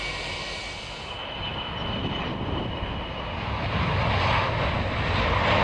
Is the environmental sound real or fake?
real